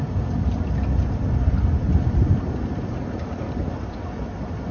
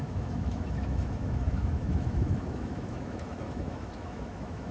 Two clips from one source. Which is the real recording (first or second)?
first